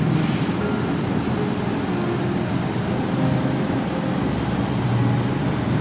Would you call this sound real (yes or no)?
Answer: yes